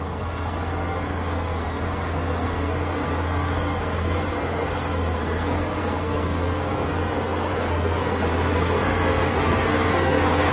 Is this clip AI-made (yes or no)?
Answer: yes